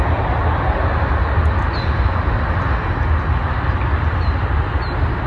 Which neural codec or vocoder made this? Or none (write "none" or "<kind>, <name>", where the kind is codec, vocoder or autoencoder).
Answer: none